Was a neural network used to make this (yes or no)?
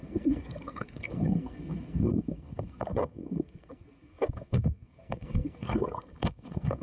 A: yes